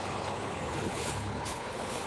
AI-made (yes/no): yes